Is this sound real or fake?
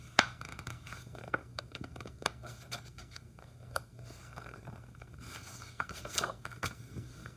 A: fake